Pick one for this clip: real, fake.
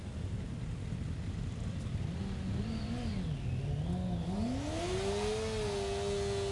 real